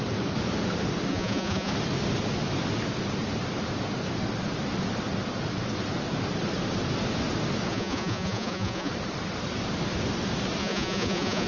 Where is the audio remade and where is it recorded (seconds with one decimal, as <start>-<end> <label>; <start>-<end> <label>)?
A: 0.0-1.1 recorded; 1.1-1.7 remade; 1.7-7.7 recorded; 7.7-8.9 remade; 8.9-10.6 recorded; 10.6-11.5 remade